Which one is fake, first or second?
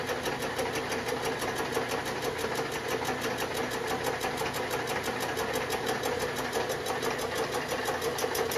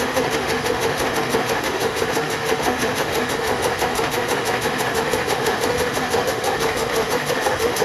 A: second